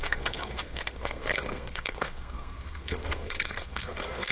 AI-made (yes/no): yes